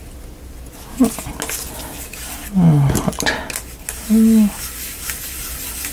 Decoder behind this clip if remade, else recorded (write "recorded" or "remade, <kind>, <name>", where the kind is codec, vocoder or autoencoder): recorded